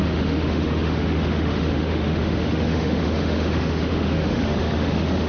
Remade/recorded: remade